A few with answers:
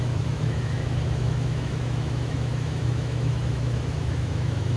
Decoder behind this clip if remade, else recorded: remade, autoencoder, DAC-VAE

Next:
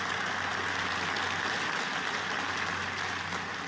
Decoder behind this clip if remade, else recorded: recorded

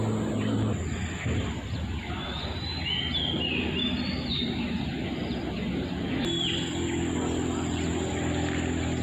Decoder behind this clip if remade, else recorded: recorded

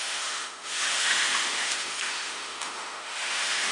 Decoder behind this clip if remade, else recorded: remade, autoencoder, DAC-VAE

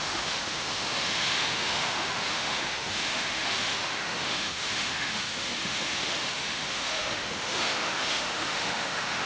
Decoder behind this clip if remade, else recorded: remade, autoencoder, DAC-VAE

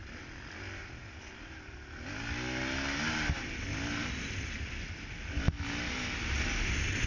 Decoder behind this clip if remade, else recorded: recorded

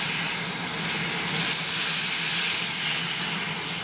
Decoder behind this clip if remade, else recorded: recorded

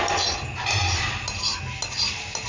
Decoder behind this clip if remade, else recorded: recorded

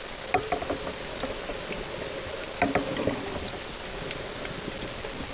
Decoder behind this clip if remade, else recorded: recorded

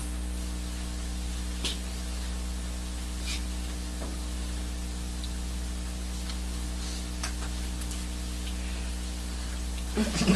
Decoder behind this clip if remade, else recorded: recorded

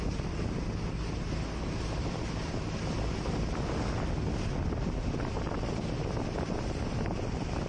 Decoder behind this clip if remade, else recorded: recorded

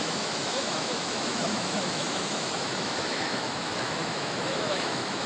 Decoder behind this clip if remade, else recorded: remade, autoencoder, DAC-VAE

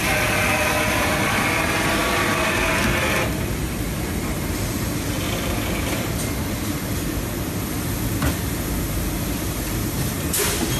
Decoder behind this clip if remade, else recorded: recorded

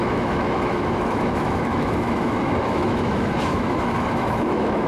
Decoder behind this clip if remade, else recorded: remade, autoencoder, DAC-VAE